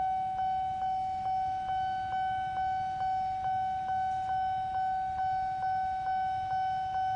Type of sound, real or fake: real